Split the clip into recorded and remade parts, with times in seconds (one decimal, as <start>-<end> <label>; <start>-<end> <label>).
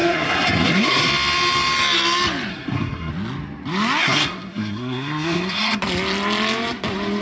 0.0-1.1 remade; 1.1-2.5 recorded; 2.5-3.1 remade; 3.1-4.0 recorded; 4.0-5.8 remade; 5.8-7.2 recorded